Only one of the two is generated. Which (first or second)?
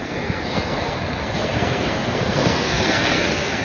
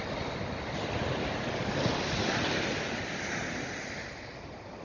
first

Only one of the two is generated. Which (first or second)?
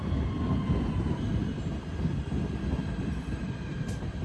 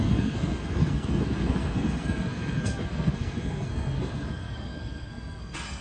second